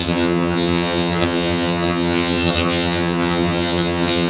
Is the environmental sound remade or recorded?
remade